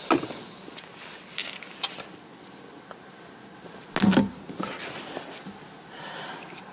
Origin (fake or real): real